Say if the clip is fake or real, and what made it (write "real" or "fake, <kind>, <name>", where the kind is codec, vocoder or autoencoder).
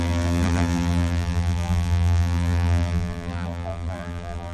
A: fake, vocoder, BigVGAN v2